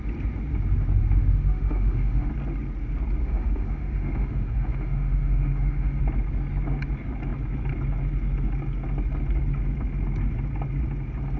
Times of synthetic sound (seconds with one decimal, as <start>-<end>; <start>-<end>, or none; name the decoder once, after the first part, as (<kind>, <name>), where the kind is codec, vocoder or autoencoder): 1.0-2.3 (autoencoder, DAC-VAE); 3.2-6.0